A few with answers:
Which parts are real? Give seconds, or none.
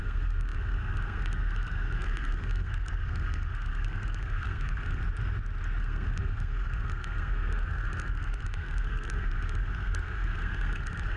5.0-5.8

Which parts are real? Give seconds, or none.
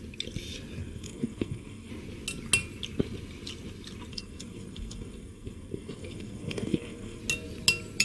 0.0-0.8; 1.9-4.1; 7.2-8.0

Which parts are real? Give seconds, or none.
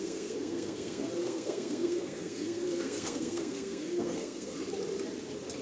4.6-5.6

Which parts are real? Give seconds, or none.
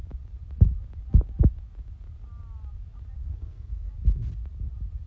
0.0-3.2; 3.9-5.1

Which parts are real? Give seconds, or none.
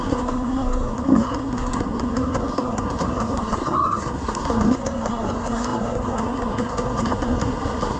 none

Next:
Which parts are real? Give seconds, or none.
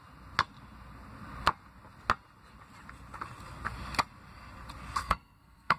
0.0-5.0